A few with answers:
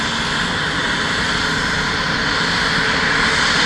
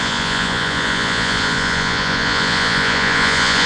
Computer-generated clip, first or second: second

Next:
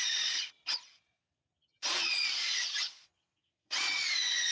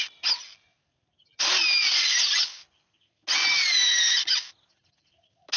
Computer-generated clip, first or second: first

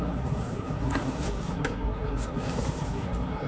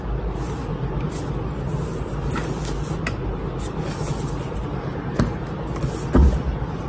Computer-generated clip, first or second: first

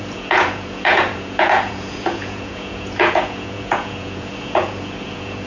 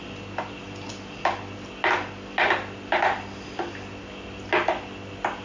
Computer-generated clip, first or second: first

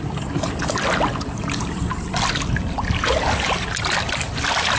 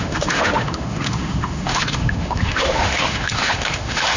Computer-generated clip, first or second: second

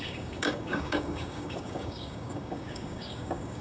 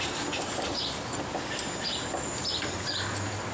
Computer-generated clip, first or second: first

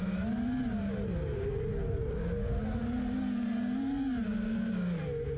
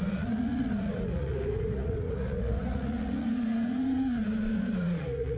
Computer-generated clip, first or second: second